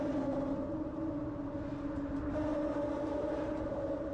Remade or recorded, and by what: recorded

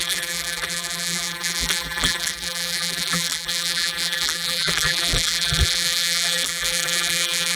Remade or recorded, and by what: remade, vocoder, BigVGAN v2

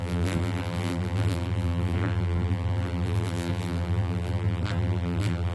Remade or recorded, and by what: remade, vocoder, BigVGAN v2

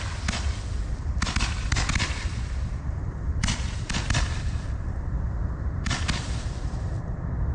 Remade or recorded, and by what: remade, vocoder, BigVGAN v2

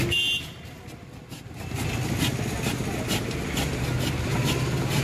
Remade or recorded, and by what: recorded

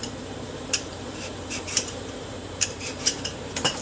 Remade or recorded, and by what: remade, vocoder, BigVGAN v2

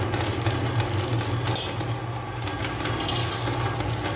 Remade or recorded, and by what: recorded